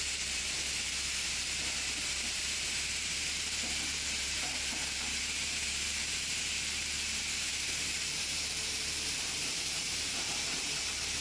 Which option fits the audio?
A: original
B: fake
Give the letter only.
B